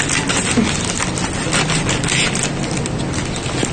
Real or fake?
real